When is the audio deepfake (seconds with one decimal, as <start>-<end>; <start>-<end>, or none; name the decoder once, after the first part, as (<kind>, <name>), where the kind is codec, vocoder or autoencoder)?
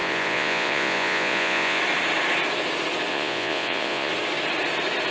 0.0-1.8 (vocoder, Vocos); 3.1-4.1